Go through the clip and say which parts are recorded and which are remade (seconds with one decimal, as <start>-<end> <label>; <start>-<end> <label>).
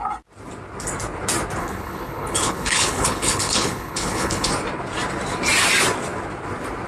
0.0-1.6 recorded; 1.6-4.5 remade; 4.5-6.9 recorded